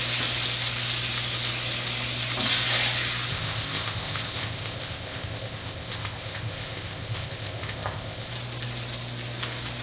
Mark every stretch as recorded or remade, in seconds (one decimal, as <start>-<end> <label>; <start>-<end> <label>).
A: 0.0-3.3 recorded; 3.3-8.3 remade; 8.3-9.8 recorded